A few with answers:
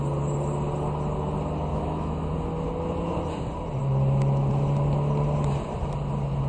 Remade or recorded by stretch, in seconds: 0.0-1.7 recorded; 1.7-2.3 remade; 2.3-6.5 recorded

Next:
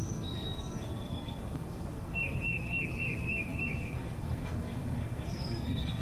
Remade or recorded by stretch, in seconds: 0.0-6.0 remade

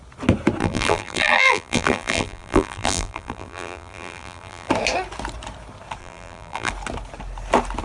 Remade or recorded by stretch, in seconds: 0.0-0.6 recorded; 0.6-4.7 remade; 4.7-6.0 recorded; 6.0-6.7 remade; 6.7-7.8 recorded

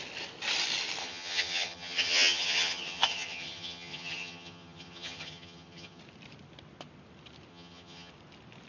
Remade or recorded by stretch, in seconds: 0.0-1.0 recorded; 1.0-6.0 remade; 6.0-7.5 recorded; 7.5-8.1 remade; 8.1-8.7 recorded